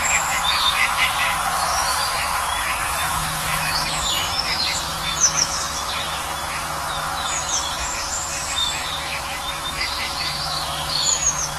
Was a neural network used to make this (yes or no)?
yes